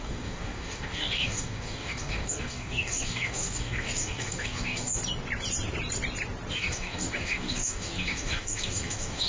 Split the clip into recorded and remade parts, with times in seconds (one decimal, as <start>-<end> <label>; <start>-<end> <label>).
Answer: 0.0-5.0 remade; 5.0-6.5 recorded; 6.5-9.3 remade